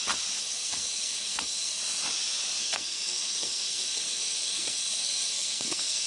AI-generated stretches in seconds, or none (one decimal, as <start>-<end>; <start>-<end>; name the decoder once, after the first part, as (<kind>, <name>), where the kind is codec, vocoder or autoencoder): 0.4-1.8 (codec, SNAC); 2.6-6.1